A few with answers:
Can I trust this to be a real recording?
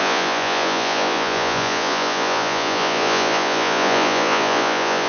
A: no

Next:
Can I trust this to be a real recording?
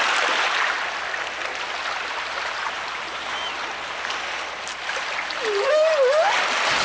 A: yes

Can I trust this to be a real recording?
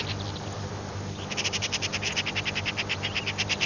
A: yes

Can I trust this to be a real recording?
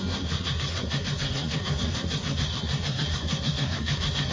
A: no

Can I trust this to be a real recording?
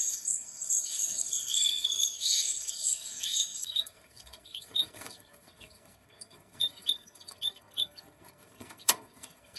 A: no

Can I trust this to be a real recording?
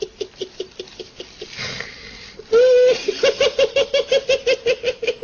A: yes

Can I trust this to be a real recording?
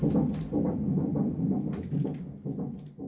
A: yes